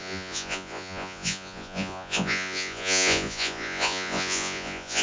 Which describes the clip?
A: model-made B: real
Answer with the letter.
A